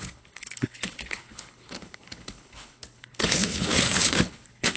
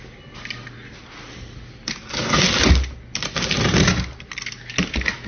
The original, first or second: second